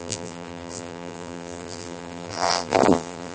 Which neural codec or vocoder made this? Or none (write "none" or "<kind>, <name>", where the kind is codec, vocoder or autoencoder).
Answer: vocoder, BigVGAN v2